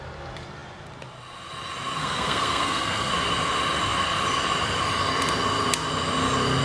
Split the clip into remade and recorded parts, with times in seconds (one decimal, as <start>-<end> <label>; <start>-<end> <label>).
0.0-2.0 recorded; 2.0-3.1 remade; 3.1-6.6 recorded